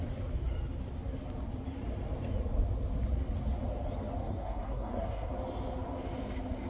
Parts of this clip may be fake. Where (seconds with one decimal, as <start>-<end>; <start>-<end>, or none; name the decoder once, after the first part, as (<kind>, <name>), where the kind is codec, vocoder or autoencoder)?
4.2-5.3 (codec, SNAC)